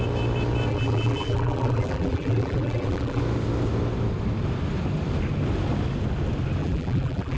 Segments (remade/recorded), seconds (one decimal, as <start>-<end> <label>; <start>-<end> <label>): 0.0-0.7 recorded; 0.7-3.2 remade; 3.2-6.6 recorded; 6.6-7.4 remade

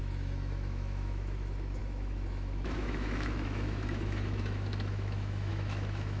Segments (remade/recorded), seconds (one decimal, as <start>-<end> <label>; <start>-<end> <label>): 0.0-6.2 remade